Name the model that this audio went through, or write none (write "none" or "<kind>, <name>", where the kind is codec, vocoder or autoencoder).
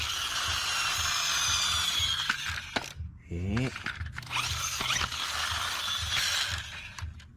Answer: none